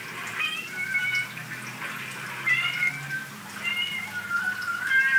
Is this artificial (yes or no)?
no